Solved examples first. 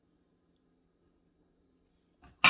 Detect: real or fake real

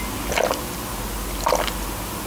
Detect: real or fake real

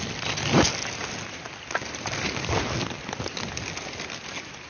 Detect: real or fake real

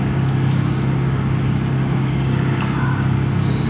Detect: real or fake fake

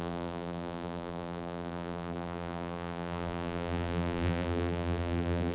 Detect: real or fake fake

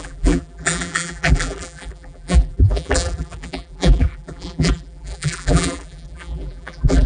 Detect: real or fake fake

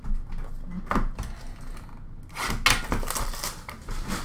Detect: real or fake real